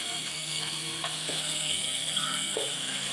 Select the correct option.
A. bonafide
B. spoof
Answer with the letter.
B